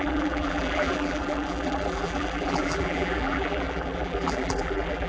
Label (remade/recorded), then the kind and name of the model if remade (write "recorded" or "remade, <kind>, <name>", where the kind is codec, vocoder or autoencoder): remade, vocoder, BigVGAN v2